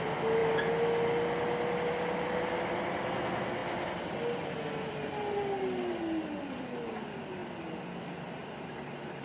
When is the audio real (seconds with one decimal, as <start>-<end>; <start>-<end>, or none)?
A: 0.0-9.2